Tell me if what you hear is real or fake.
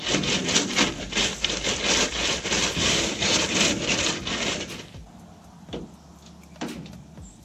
real